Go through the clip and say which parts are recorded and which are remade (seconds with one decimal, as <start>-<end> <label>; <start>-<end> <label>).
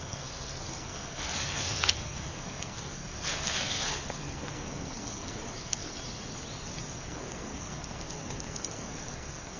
0.0-5.9 remade; 5.9-7.0 recorded; 7.0-9.6 remade